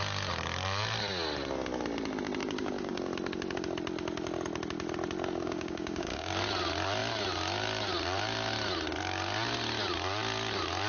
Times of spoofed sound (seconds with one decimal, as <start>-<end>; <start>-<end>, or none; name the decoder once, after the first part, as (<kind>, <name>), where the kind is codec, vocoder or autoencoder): 2.4-3.0 (codec, DAC); 5.4-6.3